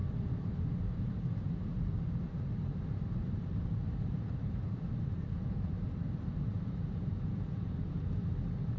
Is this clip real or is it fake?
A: fake